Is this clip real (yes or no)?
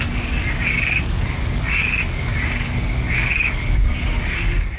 no